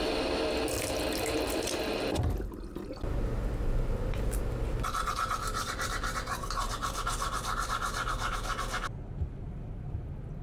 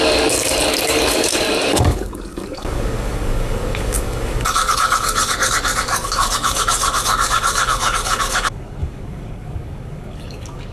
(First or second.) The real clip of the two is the first